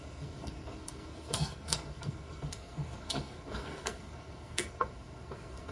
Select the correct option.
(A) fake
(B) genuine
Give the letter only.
A